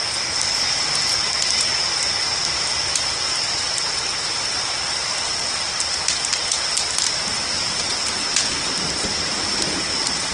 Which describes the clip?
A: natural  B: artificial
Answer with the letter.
A